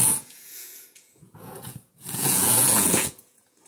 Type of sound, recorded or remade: remade